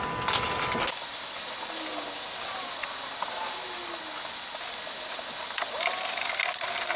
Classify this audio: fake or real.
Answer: real